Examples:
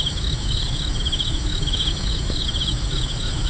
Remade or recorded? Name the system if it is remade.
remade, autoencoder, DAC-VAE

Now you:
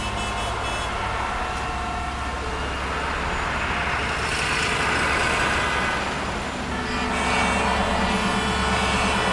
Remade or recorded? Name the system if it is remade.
recorded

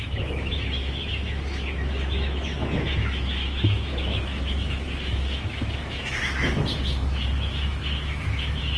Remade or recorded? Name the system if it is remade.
remade, autoencoder, DAC-VAE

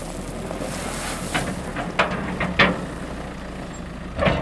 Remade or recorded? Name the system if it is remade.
recorded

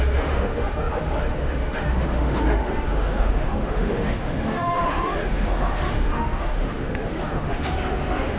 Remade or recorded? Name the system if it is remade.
remade, autoencoder, DAC-VAE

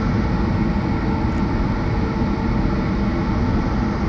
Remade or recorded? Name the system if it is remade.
recorded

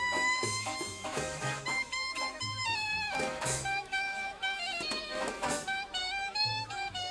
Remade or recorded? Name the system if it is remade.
remade, autoencoder, DAC-VAE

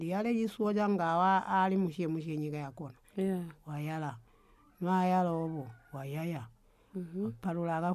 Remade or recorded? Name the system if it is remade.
recorded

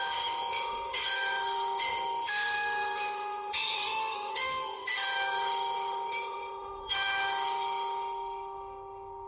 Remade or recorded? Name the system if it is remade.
remade, autoencoder, DAC-VAE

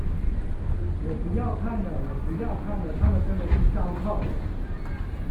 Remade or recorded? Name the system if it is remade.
recorded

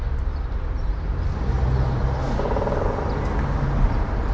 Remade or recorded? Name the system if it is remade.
recorded